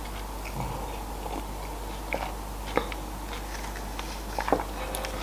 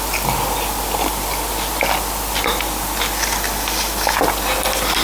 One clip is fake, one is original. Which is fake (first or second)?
second